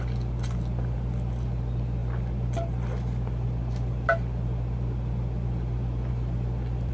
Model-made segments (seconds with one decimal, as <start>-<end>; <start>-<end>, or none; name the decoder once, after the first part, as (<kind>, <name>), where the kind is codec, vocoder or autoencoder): none